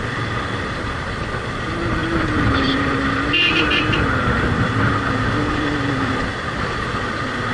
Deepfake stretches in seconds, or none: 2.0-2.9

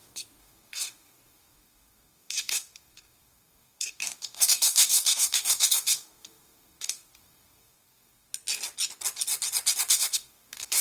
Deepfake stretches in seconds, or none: 0.0-8.3; 9.9-10.8

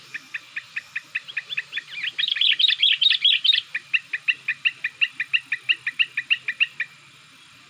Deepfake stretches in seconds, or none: none

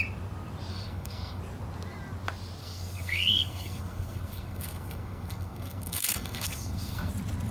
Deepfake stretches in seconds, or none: 0.7-1.4; 2.6-7.1